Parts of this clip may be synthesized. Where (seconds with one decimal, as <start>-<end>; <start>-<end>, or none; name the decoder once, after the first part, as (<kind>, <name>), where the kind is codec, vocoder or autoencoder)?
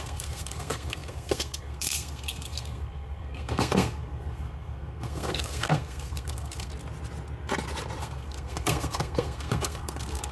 0.0-6.7 (codec, SNAC); 8.0-10.3